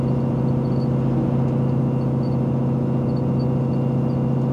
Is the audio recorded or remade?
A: recorded